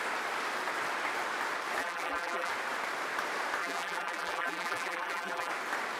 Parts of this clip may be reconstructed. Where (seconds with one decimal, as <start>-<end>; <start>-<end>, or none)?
1.8-2.5; 3.6-5.5

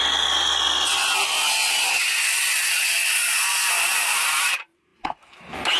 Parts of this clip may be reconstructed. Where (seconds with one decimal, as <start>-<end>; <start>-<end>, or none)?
3.5-5.8

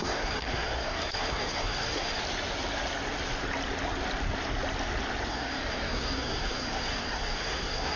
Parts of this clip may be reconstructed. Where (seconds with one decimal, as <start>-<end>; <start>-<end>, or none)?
0.0-2.2; 5.3-8.0

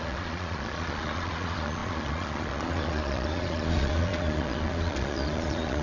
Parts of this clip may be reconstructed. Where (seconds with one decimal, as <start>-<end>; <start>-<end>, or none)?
0.0-5.8

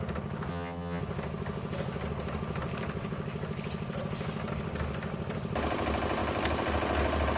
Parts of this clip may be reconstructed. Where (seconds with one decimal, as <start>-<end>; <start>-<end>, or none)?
0.5-1.0

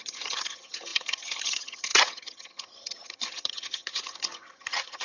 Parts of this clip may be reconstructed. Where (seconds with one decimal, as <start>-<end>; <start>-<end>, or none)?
0.0-5.0